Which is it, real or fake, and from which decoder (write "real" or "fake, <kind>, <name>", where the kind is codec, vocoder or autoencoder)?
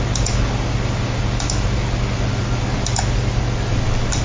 real